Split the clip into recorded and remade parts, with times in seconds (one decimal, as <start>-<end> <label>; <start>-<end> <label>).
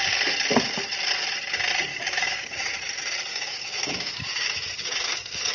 0.0-1.9 recorded; 1.9-2.7 remade; 2.7-3.3 recorded; 3.3-5.5 remade